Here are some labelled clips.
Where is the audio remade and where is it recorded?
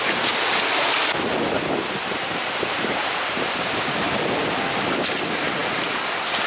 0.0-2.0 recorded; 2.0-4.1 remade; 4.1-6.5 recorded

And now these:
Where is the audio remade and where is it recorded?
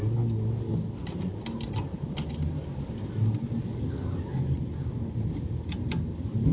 0.0-6.5 recorded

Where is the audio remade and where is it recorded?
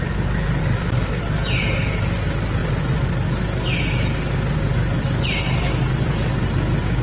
0.0-0.6 recorded; 0.6-1.2 remade; 1.2-7.0 recorded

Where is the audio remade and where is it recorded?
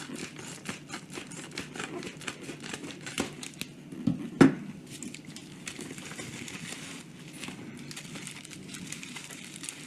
0.0-8.6 recorded; 8.6-9.9 remade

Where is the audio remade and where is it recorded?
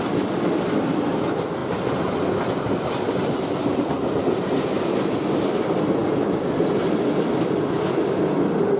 0.0-8.8 recorded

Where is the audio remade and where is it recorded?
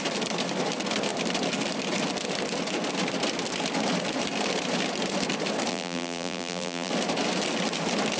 0.0-5.7 recorded; 5.7-6.9 remade; 6.9-8.2 recorded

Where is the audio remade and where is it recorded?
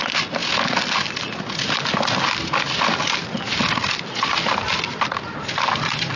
0.0-6.2 recorded